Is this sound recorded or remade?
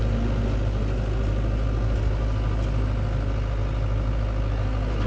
recorded